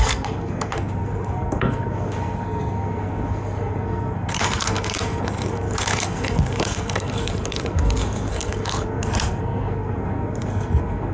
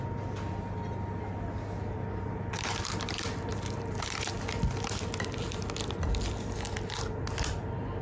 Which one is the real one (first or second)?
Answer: second